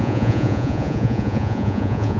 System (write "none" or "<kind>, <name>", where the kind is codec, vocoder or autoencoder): vocoder, Vocos